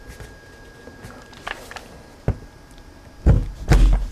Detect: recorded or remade recorded